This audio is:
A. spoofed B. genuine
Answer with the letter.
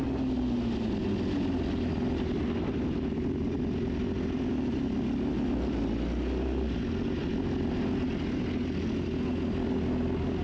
B